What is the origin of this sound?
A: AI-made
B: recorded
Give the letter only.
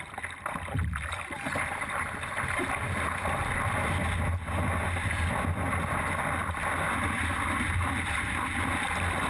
B